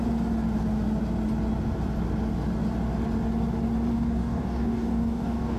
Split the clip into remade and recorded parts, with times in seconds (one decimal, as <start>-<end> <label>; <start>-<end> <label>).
0.0-3.9 recorded; 3.9-5.6 remade